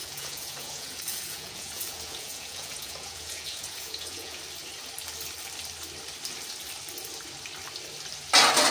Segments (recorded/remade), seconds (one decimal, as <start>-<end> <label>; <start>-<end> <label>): 0.0-4.4 remade; 4.4-8.7 recorded